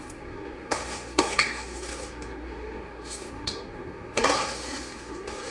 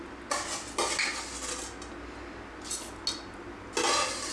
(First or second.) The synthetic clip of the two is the first